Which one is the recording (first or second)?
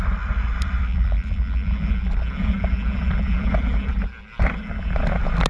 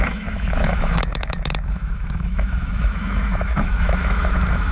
first